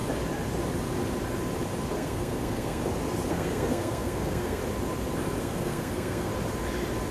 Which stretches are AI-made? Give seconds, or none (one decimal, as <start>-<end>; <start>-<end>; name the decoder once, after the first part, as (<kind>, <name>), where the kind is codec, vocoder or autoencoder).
1.9-2.8 (codec, SNAC); 3.3-4.6; 5.4-6.3